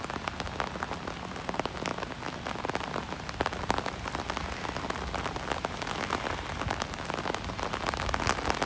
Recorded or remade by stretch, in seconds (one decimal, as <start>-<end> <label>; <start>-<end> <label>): 0.0-8.7 recorded